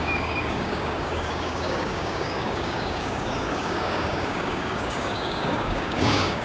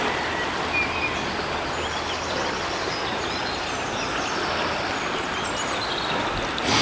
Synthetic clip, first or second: first